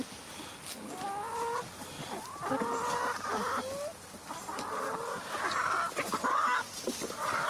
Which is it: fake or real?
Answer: real